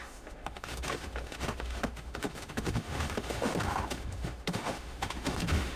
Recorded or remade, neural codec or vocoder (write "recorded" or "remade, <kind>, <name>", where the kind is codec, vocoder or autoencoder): remade, autoencoder, DAC-VAE